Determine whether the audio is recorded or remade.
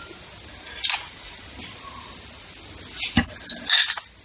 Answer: recorded